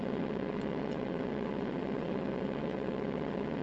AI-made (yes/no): yes